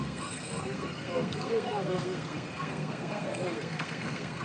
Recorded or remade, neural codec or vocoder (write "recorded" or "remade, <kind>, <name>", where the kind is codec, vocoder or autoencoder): remade, codec, SNAC